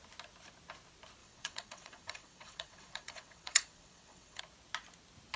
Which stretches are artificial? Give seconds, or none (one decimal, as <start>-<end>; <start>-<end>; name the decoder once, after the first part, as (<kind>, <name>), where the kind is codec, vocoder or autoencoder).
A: 1.2-4.4 (vocoder, WaveNeXt)